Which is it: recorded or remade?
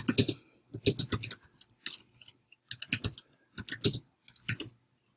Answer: recorded